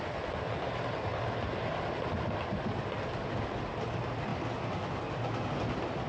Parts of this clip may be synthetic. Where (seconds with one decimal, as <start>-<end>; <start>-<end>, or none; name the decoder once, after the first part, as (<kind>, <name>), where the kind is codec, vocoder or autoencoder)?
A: none